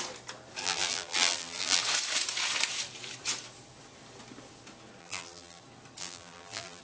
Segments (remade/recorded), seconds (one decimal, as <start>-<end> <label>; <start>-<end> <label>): 0.0-0.6 recorded; 0.6-1.8 remade; 1.8-5.0 recorded; 5.0-5.6 remade; 5.6-6.0 recorded; 6.0-6.8 remade